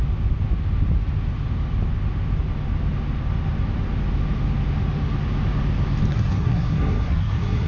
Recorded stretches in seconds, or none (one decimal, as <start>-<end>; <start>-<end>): 0.0-6.1